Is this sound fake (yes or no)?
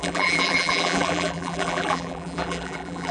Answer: yes